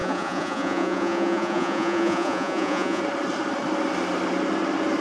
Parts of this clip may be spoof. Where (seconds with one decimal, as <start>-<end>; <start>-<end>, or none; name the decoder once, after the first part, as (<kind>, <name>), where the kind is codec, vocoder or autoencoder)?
0.0-3.0 (vocoder, Vocos)